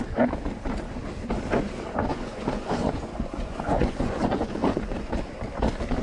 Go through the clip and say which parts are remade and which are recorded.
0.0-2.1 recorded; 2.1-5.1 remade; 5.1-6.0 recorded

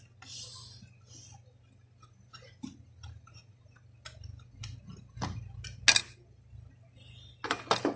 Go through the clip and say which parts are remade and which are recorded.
0.0-8.0 recorded

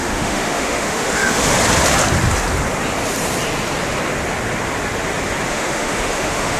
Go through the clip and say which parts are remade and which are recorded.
0.0-1.5 remade; 1.5-5.5 recorded; 5.5-6.6 remade

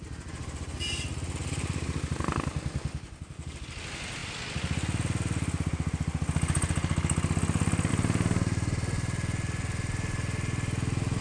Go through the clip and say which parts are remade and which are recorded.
0.0-11.2 recorded

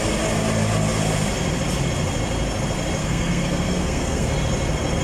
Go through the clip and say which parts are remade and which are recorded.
0.0-3.0 recorded; 3.0-4.3 remade; 4.3-5.0 recorded

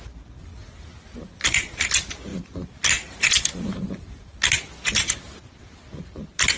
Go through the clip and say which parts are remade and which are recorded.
0.0-6.6 recorded

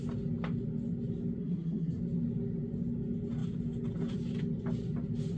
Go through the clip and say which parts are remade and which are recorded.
0.0-1.4 recorded; 1.4-2.0 remade; 2.0-5.4 recorded

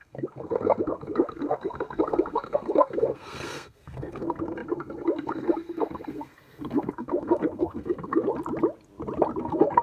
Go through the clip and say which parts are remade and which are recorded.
0.0-8.3 remade; 8.3-9.4 recorded; 9.4-9.8 remade